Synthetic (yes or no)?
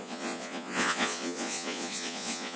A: yes